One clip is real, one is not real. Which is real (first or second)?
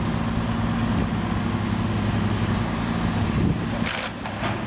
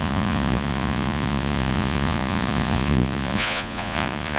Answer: first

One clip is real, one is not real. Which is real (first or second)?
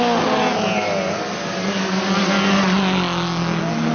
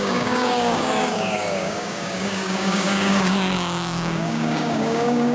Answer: first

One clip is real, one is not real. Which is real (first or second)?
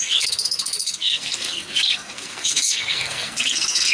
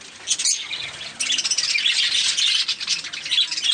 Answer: second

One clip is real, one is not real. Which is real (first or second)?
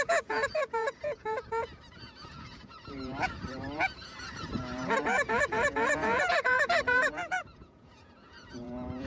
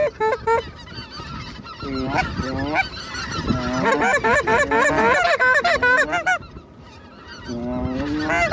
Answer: second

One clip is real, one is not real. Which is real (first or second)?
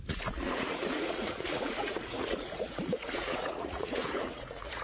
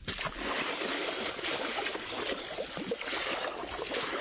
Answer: second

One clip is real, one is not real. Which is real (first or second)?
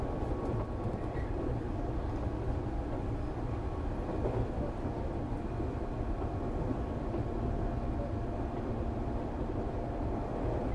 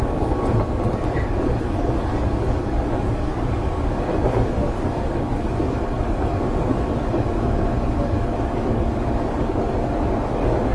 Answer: first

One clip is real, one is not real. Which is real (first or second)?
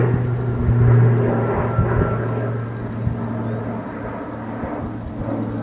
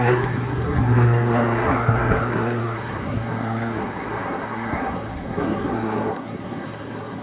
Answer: first